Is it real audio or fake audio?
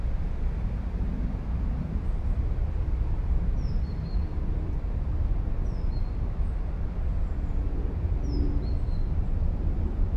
real